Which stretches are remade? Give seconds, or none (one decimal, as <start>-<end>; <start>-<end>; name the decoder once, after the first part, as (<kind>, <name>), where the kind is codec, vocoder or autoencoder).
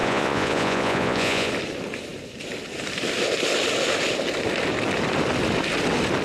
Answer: 0.0-1.5 (vocoder, Vocos)